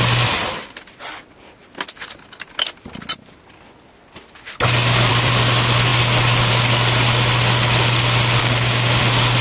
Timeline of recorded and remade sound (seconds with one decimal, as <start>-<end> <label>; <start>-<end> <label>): 0.0-8.4 recorded; 8.4-9.0 remade; 9.0-9.4 recorded